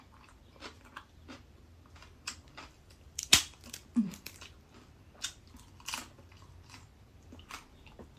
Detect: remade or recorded remade